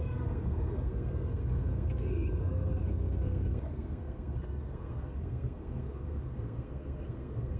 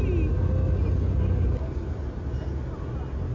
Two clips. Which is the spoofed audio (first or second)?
first